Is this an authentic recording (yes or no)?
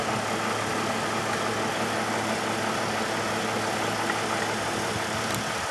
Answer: yes